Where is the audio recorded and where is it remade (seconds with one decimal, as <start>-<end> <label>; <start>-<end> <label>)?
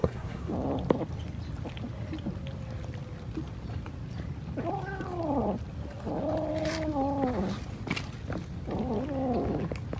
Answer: 0.0-0.5 remade; 0.5-10.0 recorded